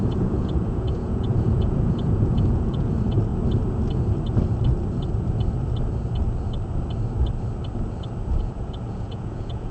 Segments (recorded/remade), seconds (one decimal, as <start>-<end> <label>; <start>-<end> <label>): 0.0-3.3 remade; 3.3-8.4 recorded; 8.4-9.7 remade